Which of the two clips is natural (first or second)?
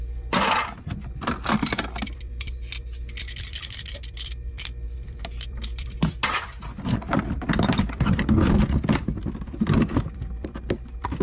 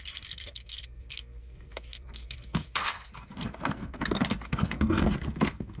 first